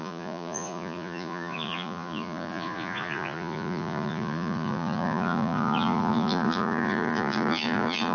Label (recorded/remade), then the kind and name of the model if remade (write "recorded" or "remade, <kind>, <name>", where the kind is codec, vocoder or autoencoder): remade, vocoder, Vocos